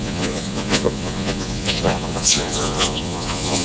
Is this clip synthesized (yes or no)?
yes